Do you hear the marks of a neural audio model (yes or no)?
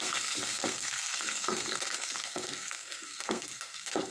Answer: yes